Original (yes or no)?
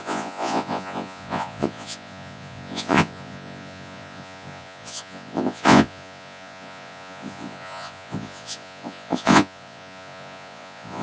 no